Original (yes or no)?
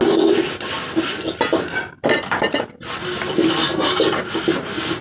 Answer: yes